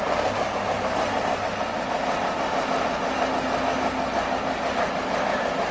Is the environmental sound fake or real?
real